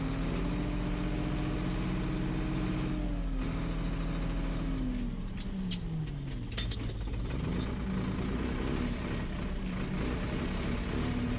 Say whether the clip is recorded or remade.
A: recorded